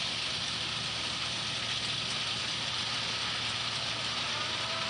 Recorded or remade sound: recorded